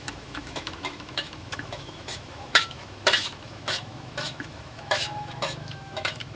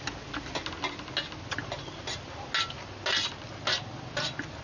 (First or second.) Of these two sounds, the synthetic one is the first